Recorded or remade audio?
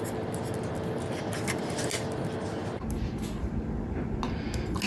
recorded